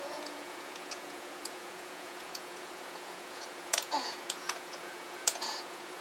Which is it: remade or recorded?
remade